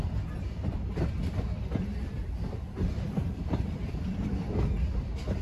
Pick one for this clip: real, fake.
fake